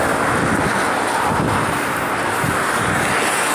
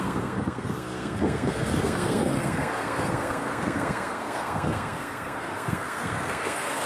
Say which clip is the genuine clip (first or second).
first